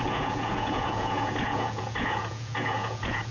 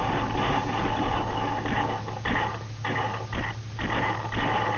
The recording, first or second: second